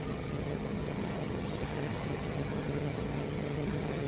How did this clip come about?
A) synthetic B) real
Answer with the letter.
A